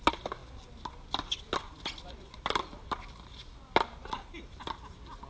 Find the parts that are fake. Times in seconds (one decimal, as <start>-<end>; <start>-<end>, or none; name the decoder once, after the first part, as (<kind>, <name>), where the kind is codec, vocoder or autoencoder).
none